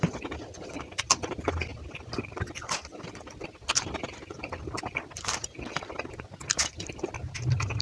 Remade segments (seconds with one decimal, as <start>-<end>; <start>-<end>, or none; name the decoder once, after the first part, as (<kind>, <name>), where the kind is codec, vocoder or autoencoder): none